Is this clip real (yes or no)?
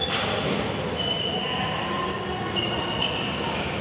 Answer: yes